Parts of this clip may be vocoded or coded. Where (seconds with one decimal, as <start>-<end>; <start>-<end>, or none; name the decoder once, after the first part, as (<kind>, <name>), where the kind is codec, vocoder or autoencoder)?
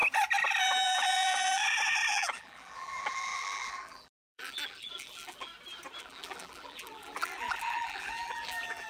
0.6-1.6 (vocoder, BigVGAN v2); 2.1-5.5; 6.0-8.9